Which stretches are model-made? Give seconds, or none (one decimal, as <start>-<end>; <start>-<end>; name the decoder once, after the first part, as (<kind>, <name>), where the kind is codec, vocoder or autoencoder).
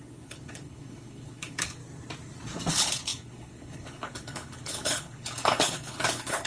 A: 0.0-1.8 (codec, HILCodec); 2.7-6.5